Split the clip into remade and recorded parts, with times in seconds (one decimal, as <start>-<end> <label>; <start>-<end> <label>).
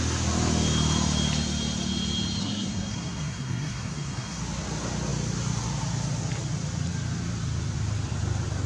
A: 0.0-2.4 recorded; 2.4-4.4 remade; 4.4-8.7 recorded